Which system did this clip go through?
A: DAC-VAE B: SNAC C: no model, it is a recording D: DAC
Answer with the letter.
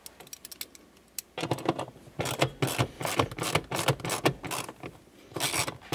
C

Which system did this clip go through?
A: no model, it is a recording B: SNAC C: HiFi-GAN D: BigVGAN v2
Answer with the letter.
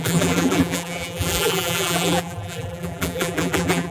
D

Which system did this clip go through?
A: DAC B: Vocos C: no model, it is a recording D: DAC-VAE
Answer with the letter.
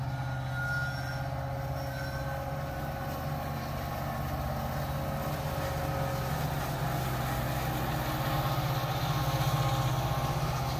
C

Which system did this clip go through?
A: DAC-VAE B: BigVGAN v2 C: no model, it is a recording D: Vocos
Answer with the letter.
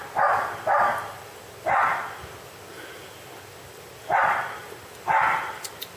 C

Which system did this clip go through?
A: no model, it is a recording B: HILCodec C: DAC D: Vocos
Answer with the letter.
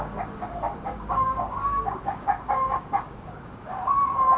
C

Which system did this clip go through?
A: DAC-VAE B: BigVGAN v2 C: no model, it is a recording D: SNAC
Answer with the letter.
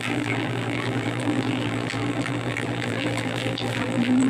B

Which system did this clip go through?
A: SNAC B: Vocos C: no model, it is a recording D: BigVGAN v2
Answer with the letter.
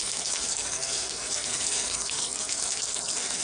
A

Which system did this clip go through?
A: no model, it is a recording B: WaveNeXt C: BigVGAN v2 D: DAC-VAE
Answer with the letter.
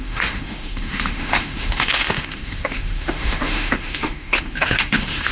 D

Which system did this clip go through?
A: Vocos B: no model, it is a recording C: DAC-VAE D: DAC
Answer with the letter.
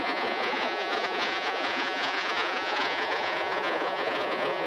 A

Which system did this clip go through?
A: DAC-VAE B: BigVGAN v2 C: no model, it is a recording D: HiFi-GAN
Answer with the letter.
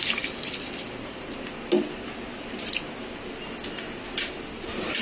C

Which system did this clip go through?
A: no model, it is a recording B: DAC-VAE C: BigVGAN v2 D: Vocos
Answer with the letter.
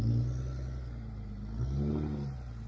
A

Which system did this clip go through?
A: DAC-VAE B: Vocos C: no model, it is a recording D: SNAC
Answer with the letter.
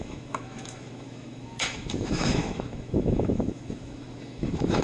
A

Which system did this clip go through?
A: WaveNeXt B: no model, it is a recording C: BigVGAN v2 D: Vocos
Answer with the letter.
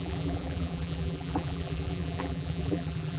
C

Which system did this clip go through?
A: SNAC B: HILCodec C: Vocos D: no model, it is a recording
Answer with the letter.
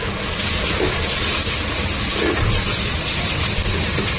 D